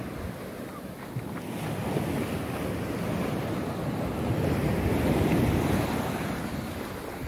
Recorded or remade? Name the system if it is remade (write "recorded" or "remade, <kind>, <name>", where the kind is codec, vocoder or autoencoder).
recorded